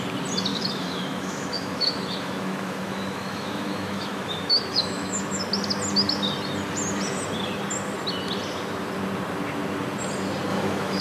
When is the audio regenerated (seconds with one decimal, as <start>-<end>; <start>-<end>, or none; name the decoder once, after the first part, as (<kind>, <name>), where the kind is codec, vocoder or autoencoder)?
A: 0.5-5.4 (autoencoder, DAC-VAE); 10.5-11.0